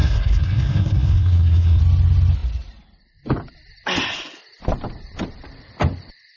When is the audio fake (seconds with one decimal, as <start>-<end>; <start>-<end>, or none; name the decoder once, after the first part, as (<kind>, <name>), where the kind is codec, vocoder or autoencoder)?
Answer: 0.0-1.8 (codec, SNAC)